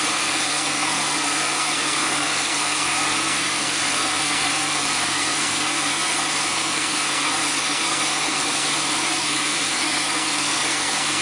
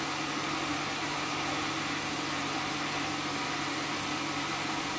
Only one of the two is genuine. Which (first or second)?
second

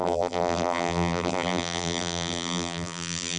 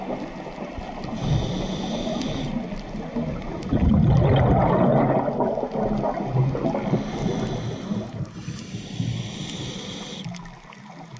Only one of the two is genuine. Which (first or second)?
second